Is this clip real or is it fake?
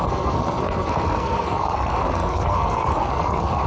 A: fake